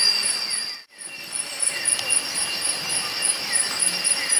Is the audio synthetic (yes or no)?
no